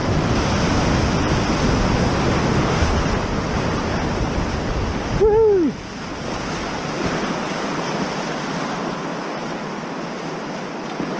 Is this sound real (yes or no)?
yes